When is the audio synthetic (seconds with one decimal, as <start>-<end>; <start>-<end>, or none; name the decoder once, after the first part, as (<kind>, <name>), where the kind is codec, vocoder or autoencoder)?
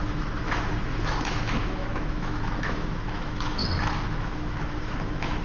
0.0-3.6 (autoencoder, DAC-VAE); 4.2-5.4